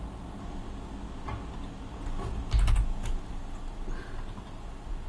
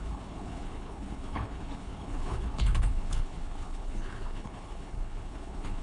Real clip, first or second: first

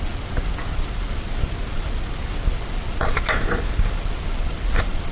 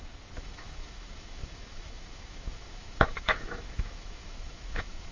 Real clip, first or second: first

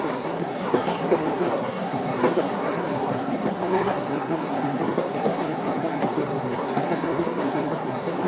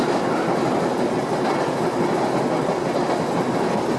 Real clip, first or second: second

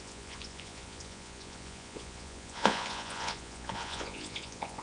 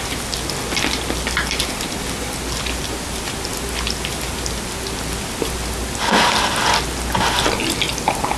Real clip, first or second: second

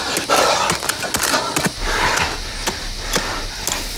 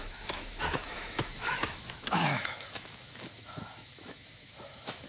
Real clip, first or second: first